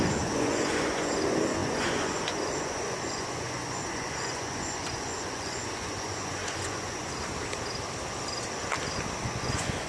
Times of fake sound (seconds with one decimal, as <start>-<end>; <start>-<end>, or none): 0.0-7.2; 9.2-9.9